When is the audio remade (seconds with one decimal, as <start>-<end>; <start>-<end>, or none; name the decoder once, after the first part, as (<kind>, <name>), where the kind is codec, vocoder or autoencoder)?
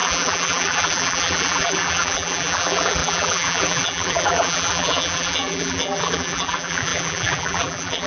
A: 0.0-8.1 (vocoder, BigVGAN v2)